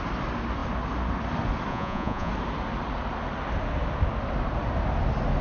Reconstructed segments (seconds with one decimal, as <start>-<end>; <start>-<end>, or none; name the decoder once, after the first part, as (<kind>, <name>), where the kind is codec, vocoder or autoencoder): 1.7-2.3 (vocoder, Vocos)